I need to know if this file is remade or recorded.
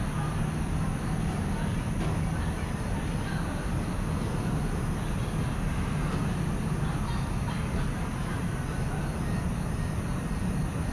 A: recorded